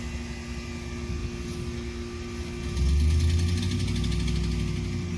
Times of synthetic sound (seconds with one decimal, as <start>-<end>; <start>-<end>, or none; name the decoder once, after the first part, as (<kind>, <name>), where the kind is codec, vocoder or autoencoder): none